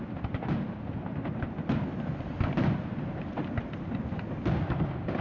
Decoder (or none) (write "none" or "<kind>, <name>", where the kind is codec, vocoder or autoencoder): none